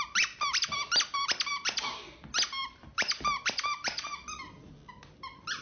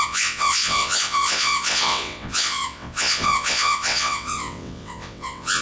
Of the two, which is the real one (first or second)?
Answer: first